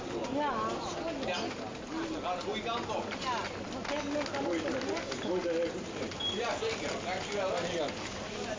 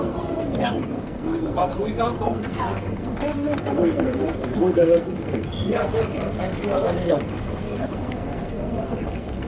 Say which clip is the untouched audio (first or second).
first